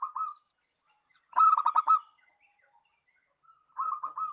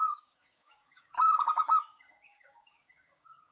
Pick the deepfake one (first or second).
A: second